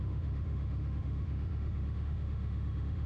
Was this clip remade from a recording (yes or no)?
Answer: yes